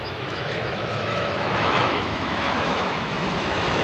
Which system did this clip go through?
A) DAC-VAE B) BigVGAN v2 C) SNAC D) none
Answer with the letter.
A